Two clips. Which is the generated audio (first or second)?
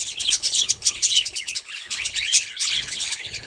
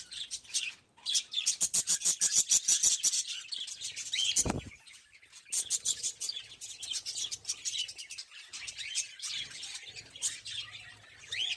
first